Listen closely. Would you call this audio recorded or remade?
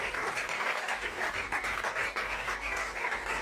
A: remade